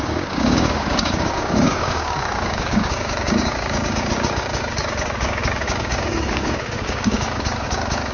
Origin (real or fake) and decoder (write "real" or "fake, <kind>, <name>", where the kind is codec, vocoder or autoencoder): fake, codec, DAC